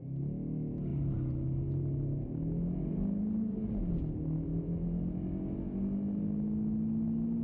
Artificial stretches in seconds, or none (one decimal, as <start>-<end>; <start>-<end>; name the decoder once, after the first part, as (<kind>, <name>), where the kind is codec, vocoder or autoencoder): none